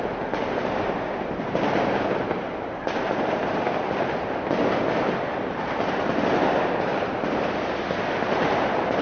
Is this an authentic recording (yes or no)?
yes